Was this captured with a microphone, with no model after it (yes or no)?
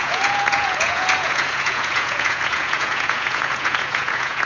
no